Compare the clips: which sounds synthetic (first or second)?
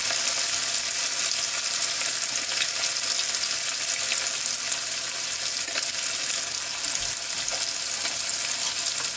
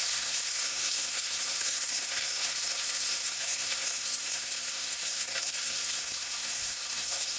second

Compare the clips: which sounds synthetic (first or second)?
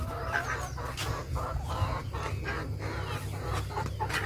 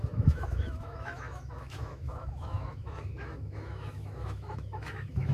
second